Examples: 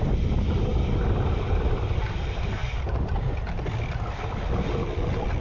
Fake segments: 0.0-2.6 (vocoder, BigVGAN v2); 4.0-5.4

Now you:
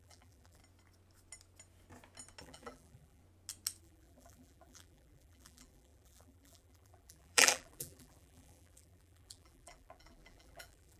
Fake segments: 0.0-0.6 (vocoder, BigVGAN v2); 2.4-3.2; 3.8-11.0

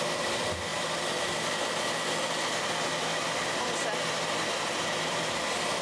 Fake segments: none

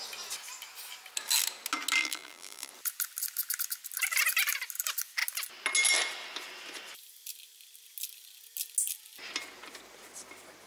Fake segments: 2.0-2.7 (vocoder, BigVGAN v2)